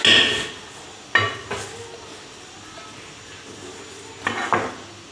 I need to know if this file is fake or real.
real